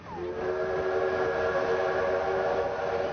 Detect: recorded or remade recorded